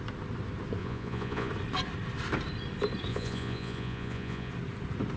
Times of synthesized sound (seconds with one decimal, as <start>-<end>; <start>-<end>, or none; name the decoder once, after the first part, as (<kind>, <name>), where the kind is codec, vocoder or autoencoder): 0.8-1.5 (vocoder, Vocos); 3.1-4.5